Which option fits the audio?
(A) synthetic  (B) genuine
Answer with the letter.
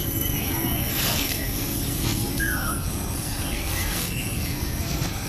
A